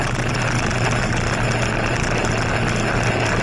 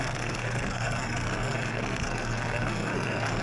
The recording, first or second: first